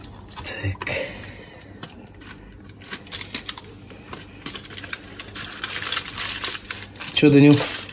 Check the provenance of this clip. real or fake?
real